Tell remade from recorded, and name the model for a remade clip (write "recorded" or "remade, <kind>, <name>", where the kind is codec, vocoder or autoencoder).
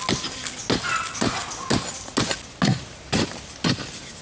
recorded